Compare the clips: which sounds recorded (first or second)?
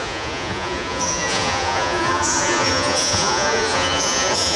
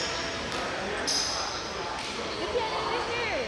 second